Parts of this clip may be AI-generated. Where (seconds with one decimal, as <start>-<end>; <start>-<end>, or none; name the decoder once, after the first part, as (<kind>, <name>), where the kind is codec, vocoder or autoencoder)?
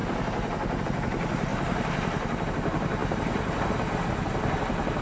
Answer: 0.0-0.8 (vocoder, BigVGAN v2); 1.5-2.5; 3.0-3.8